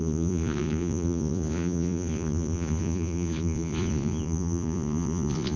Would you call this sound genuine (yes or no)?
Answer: no